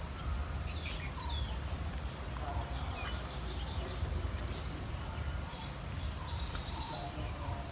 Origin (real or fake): fake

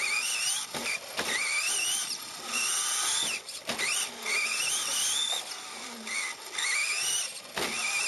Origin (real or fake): real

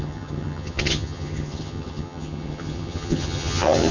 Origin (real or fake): fake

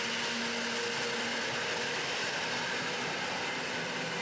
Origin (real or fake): real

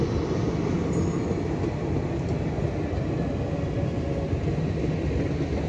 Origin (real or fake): real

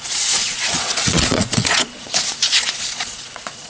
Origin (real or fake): fake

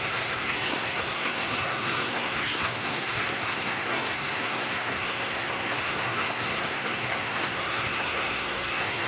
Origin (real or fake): fake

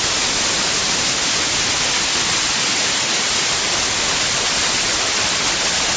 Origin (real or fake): real